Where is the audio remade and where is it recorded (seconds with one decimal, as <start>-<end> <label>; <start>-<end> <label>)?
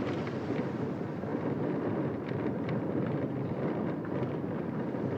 0.0-5.2 recorded